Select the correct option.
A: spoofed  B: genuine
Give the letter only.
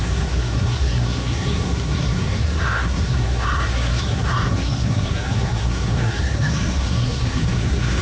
A